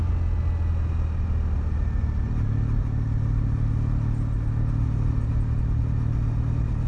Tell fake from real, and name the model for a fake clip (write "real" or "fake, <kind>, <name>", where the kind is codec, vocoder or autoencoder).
real